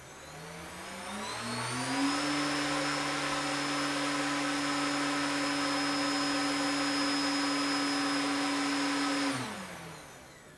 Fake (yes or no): no